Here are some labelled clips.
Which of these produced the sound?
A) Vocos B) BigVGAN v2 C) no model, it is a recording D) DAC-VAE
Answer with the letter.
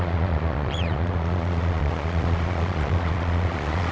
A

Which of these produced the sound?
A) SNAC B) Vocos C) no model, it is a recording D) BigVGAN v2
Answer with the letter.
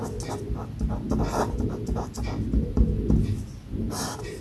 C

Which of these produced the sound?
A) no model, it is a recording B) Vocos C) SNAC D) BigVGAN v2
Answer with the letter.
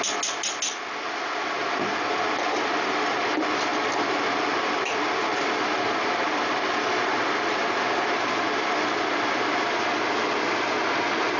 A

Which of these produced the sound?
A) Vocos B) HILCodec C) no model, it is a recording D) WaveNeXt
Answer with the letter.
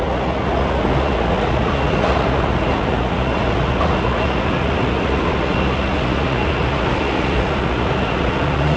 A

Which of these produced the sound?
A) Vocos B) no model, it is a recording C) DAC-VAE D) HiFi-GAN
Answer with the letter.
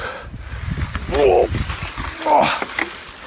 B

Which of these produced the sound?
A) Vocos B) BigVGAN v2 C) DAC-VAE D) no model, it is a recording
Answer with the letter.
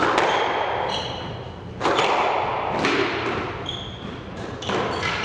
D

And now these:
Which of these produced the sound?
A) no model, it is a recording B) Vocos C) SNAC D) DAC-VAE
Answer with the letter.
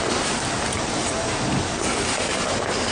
A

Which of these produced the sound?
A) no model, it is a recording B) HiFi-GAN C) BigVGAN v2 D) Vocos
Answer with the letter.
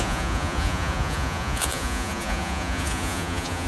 D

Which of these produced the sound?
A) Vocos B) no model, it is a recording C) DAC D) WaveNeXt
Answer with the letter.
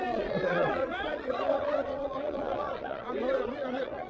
A